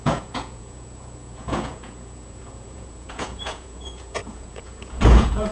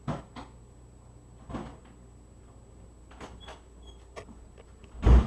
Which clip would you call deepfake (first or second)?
first